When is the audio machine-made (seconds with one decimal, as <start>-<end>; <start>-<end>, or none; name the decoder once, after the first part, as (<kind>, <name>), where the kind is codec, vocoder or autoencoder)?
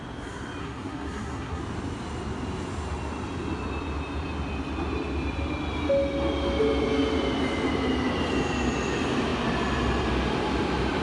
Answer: 0.6-1.6 (codec, SNAC)